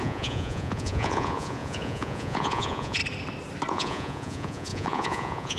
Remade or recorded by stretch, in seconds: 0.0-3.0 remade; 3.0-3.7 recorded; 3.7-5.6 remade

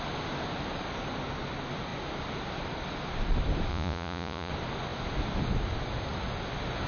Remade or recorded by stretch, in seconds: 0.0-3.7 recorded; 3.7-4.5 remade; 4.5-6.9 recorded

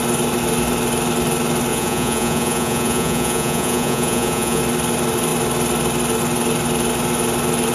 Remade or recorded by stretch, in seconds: 0.0-1.7 recorded; 1.7-4.6 remade; 4.6-7.7 recorded